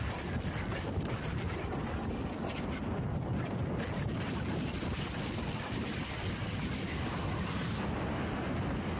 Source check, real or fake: real